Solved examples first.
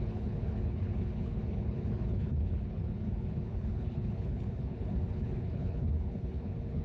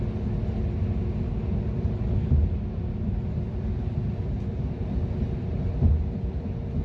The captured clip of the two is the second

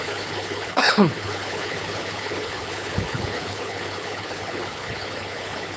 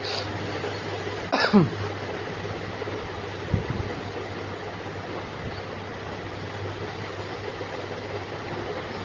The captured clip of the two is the second